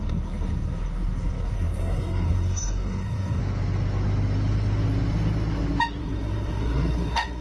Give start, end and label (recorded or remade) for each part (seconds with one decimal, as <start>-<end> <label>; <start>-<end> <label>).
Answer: 0.0-3.4 remade; 3.4-6.0 recorded; 6.0-7.4 remade